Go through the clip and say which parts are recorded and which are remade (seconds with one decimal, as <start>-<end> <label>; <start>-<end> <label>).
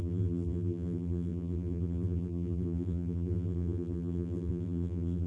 0.0-5.3 remade